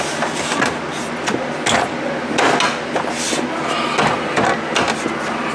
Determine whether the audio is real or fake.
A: real